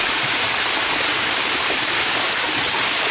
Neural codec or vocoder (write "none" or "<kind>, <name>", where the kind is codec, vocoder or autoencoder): none